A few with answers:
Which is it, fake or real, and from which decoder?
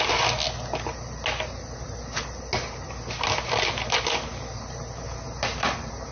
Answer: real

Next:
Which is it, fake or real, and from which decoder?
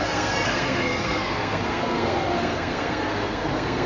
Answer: fake, codec, SNAC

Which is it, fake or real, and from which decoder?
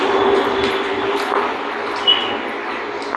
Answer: real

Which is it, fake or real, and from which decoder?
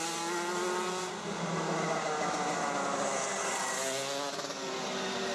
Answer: real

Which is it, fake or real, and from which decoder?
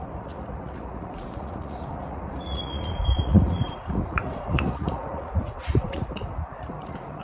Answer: fake, vocoder, Vocos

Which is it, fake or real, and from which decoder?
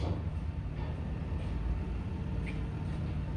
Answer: real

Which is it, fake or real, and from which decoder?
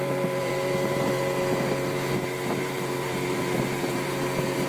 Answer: fake, vocoder, BigVGAN v2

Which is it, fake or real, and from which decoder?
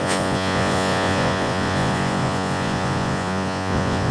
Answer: fake, vocoder, Vocos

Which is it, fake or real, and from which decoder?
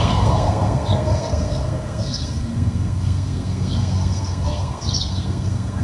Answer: fake, codec, SNAC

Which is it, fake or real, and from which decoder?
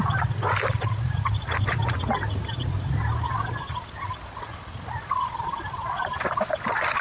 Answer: real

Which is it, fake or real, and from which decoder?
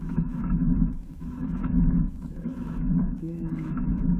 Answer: fake, autoencoder, DAC-VAE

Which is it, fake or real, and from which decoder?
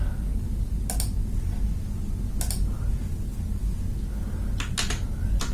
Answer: real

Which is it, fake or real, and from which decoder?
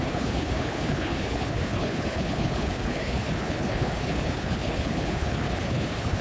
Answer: fake, codec, HILCodec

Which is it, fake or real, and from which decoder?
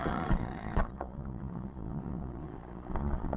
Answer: fake, vocoder, Vocos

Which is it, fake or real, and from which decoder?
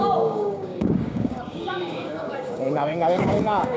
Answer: fake, codec, DAC